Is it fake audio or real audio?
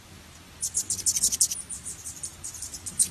fake